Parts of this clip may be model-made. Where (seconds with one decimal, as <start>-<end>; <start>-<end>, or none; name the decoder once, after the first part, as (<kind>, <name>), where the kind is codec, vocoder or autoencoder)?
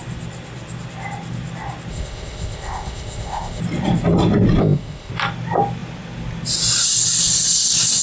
1.9-3.6 (codec, ZipCodec); 4.6-5.1